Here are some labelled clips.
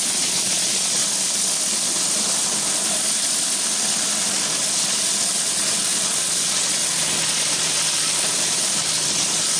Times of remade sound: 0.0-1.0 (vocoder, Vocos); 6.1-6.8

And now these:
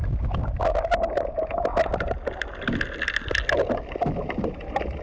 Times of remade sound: none

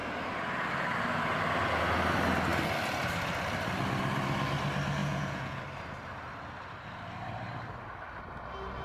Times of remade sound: 5.0-5.6 (vocoder, Vocos)

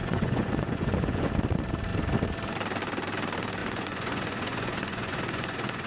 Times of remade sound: 0.0-1.3 (vocoder, Vocos); 3.6-5.9

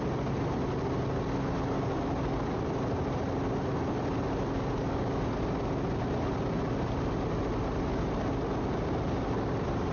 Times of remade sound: none

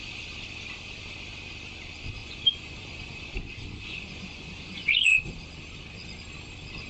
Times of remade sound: 2.2-5.3 (vocoder, Vocos)

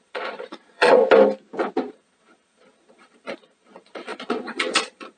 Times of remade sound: 0.0-1.0 (vocoder, Vocos); 1.9-5.2

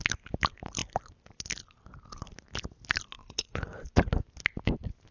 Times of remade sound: 3.2-4.1 (vocoder, Vocos)